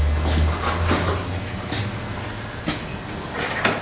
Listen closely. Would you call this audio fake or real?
real